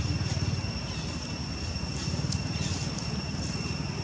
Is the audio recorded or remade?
recorded